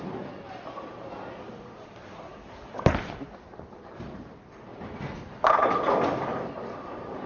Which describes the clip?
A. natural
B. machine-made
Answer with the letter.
A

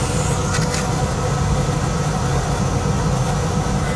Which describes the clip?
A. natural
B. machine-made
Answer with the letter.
A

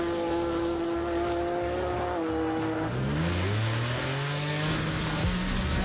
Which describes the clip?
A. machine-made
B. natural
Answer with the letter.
B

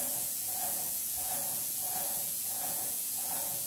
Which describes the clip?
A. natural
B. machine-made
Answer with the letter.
B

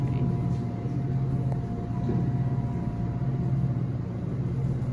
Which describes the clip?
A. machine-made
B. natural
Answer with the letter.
B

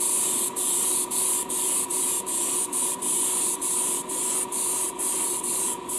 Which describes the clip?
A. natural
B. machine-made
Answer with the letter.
B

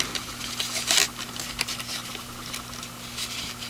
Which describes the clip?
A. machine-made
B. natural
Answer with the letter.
B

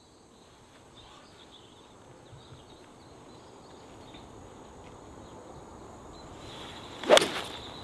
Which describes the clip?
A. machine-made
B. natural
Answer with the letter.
B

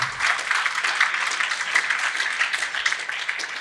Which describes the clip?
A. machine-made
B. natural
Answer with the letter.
B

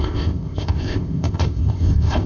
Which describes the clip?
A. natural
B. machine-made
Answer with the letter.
B